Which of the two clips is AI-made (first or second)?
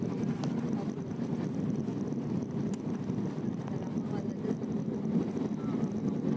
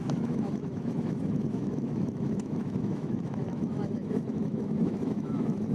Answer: second